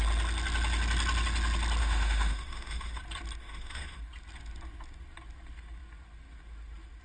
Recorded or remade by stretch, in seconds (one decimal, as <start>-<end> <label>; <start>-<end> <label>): 0.0-1.8 recorded; 1.8-3.0 remade; 3.0-3.4 recorded; 3.4-4.0 remade; 4.0-7.0 recorded